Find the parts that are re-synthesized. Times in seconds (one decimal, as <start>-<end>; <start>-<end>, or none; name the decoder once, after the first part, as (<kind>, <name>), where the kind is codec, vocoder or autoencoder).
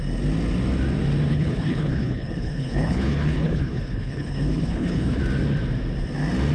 1.3-5.2 (codec, HILCodec)